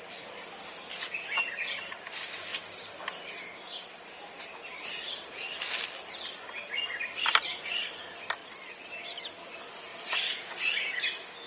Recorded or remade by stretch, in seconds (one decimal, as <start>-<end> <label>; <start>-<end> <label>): 0.0-8.4 recorded; 8.4-8.9 remade; 8.9-9.9 recorded; 9.9-10.7 remade; 10.7-11.5 recorded